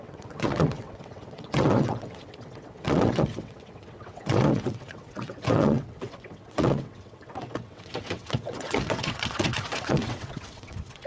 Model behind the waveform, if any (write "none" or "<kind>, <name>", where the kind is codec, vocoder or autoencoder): vocoder, WaveNeXt